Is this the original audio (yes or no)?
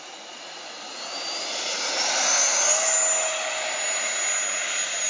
yes